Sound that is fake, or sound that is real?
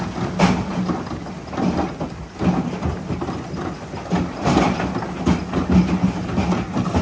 real